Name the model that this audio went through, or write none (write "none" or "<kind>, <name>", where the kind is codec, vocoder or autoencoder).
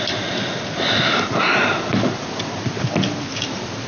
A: none